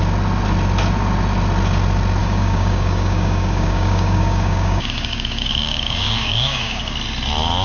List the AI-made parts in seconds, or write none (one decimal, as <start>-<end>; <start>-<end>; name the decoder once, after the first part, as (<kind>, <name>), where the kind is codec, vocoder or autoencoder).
2.2-6.8 (codec, DAC)

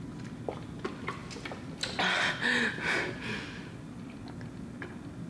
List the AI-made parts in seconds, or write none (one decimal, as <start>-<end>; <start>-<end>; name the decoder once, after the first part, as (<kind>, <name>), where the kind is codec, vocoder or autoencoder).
none

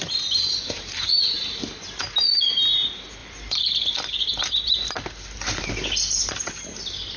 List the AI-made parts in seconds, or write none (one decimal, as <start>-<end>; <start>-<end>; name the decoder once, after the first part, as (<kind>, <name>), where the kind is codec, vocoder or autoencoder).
0.0-1.4 (vocoder, BigVGAN v2); 3.2-5.7

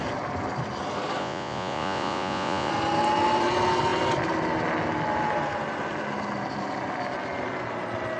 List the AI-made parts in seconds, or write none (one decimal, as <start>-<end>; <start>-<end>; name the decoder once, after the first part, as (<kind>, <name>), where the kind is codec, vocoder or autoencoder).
1.2-2.7 (vocoder, Vocos)

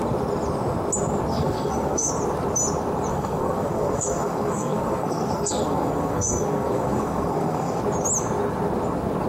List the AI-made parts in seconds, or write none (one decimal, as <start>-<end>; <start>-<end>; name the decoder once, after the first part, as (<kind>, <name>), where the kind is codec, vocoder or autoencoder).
1.3-2.1 (codec, SNAC); 3.1-7.8

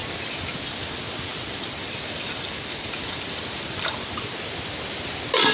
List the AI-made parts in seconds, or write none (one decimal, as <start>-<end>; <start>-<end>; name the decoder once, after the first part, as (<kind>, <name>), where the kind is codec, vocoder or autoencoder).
none